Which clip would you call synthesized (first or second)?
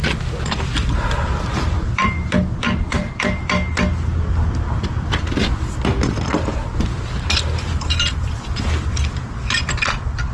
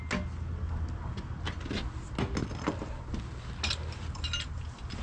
first